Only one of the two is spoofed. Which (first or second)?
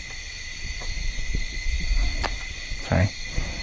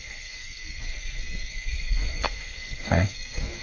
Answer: second